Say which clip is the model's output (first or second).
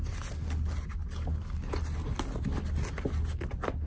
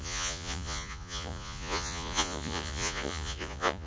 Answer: second